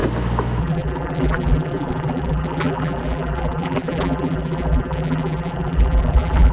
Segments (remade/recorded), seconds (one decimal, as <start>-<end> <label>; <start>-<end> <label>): 0.0-0.6 recorded; 0.6-6.5 remade